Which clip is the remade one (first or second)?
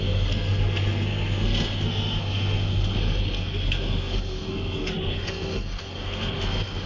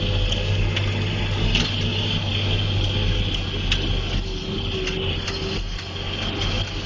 first